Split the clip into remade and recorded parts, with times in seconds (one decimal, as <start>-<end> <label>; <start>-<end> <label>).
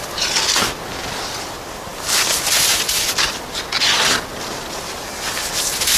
0.0-6.0 recorded